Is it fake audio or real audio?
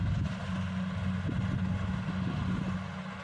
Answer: real